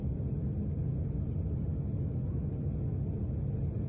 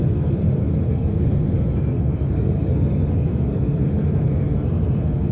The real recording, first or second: first